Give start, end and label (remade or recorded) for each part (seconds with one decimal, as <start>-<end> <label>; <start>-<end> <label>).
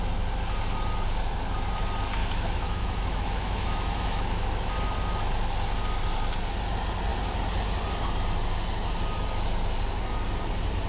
0.0-2.2 recorded; 2.2-4.7 remade; 4.7-10.9 recorded